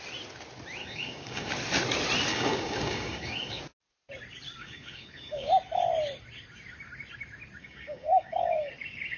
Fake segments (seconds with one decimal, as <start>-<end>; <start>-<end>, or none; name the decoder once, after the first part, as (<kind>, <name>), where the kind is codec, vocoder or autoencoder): 0.8-1.5 (codec, DAC); 2.3-3.6; 4.6-5.5; 7.6-8.7